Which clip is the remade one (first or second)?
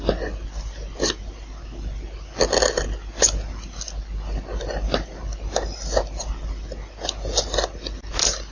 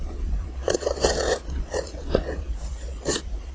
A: second